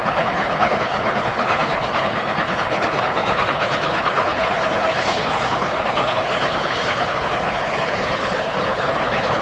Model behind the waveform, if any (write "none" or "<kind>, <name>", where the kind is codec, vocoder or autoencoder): codec, HILCodec